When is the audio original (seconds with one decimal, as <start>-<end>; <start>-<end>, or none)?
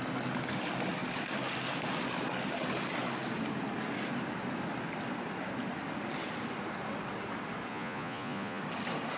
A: 0.0-7.7; 8.6-9.2